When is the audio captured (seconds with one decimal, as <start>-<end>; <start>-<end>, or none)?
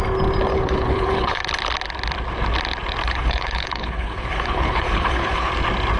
0.0-0.5; 1.4-3.0; 5.5-6.0